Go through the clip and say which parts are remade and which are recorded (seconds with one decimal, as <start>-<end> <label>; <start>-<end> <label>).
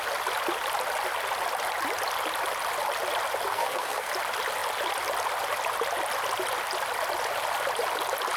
0.0-3.5 recorded; 3.5-4.1 remade; 4.1-8.4 recorded